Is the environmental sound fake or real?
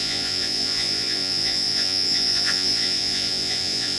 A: fake